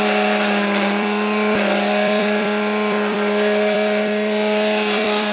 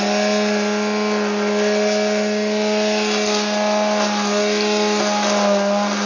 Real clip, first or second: second